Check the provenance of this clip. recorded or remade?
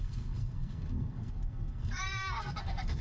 remade